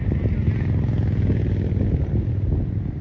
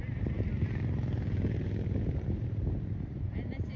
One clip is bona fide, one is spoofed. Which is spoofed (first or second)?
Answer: second